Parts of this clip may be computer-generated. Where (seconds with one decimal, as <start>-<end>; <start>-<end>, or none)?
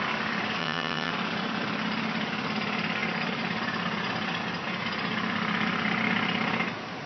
0.6-1.1